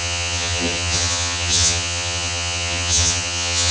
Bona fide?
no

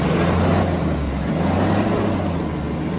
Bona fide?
yes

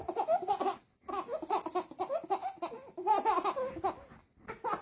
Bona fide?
yes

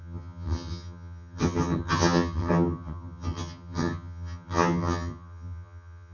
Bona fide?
no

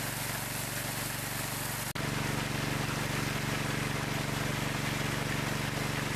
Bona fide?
yes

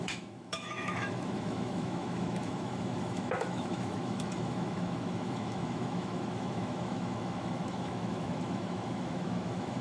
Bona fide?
no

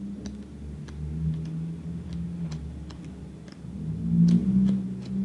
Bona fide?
yes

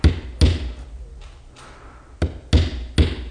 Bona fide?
yes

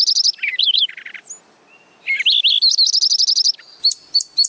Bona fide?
yes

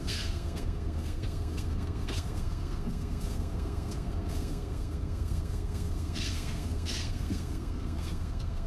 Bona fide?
no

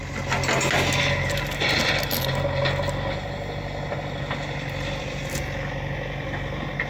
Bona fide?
yes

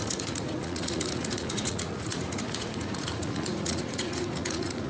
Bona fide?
no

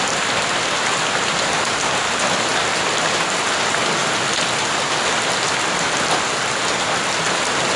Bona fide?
yes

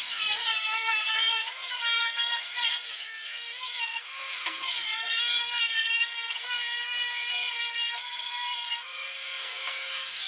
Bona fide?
no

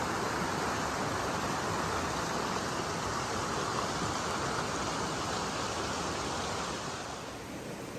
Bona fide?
yes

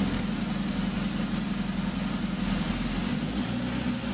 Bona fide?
yes